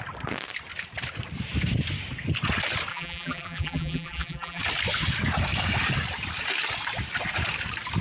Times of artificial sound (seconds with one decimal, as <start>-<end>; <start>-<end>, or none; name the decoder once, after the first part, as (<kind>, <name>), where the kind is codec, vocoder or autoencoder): 2.9-4.6 (vocoder, BigVGAN v2)